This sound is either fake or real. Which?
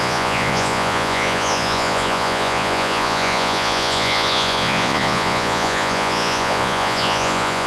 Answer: fake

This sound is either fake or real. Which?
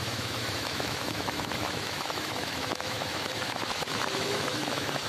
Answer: fake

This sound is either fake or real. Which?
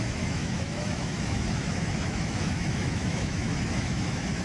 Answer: fake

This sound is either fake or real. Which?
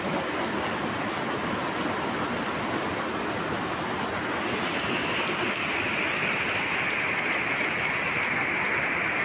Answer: real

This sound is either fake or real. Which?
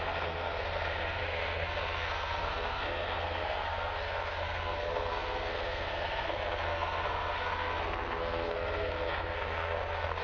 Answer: fake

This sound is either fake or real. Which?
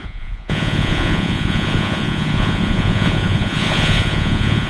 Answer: fake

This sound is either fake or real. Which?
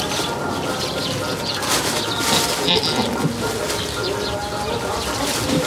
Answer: real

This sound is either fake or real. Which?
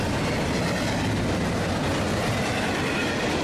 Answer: real